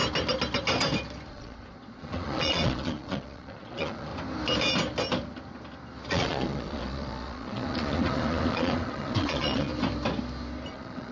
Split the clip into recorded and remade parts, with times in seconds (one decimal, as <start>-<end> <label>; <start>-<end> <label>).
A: 0.0-1.3 recorded; 1.3-4.1 remade; 4.1-6.1 recorded; 6.1-9.7 remade; 9.7-10.7 recorded; 10.7-11.1 remade